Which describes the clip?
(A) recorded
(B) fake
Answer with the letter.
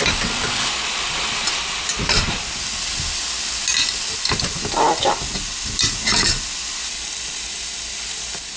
A